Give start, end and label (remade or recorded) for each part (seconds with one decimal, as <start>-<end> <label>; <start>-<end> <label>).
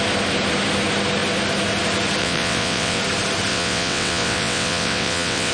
0.0-2.2 recorded; 2.2-3.0 remade; 3.0-3.5 recorded; 3.5-5.5 remade